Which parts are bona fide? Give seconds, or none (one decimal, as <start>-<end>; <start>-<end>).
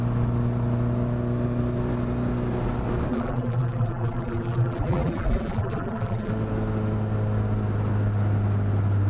0.0-3.1; 6.3-9.1